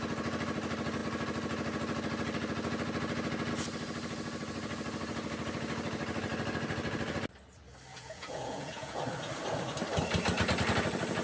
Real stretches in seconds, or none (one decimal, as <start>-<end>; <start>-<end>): 0.0-7.9; 9.0-11.2